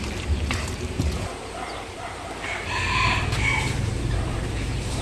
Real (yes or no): no